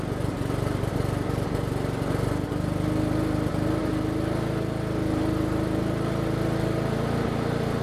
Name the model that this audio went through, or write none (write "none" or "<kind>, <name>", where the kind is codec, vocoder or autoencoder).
none